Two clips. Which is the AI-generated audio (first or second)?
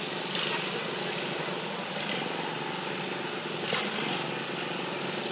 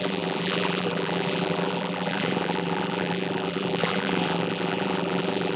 second